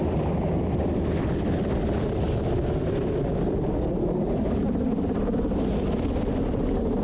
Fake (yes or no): no